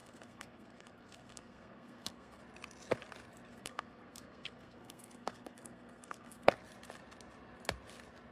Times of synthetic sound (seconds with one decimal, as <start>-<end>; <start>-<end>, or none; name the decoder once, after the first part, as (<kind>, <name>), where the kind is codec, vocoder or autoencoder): 0.0-2.4 (codec, SNAC); 3.5-6.5